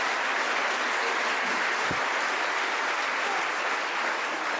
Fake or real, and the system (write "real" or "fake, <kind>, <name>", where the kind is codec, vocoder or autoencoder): real